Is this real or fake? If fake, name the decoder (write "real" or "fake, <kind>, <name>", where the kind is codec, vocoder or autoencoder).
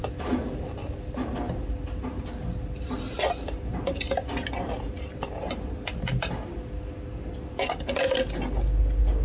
real